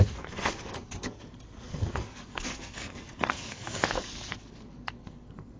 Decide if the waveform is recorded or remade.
remade